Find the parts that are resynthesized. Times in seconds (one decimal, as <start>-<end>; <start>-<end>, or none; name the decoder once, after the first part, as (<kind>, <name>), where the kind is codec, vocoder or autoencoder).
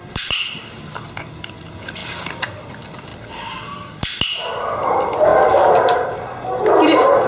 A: 0.0-0.6 (vocoder, BigVGAN v2); 3.1-3.9